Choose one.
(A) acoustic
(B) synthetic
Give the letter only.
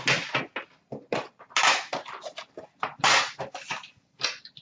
A